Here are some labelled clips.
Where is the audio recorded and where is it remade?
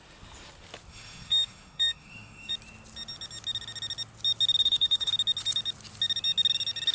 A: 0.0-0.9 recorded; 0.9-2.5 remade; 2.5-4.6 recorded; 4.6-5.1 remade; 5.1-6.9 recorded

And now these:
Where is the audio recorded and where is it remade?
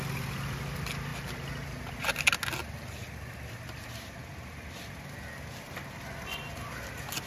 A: 0.0-7.3 recorded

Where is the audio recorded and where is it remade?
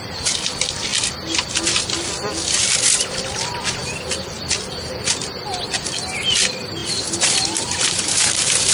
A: 0.0-6.8 recorded; 6.8-8.7 remade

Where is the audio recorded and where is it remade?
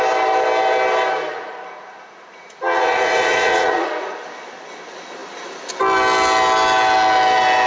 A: 0.0-1.3 recorded; 1.3-3.9 remade; 3.9-7.7 recorded